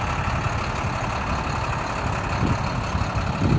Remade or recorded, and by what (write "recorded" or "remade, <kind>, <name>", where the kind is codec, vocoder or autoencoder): recorded